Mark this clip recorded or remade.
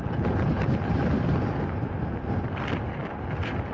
recorded